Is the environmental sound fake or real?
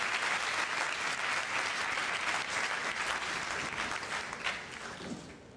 real